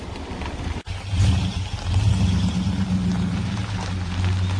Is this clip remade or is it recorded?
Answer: recorded